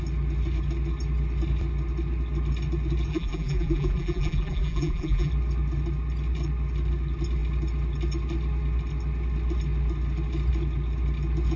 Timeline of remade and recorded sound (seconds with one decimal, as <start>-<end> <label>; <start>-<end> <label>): 0.0-3.1 recorded; 3.1-5.3 remade; 5.3-11.6 recorded